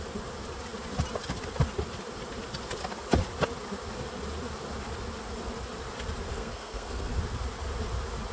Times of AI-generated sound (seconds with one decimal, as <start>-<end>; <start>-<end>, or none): 6.3-7.1